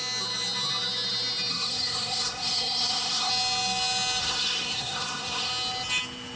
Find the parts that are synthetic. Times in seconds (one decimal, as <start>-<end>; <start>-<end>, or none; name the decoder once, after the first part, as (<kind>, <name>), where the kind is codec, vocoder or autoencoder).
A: 1.5-3.3 (codec, SNAC); 4.2-5.5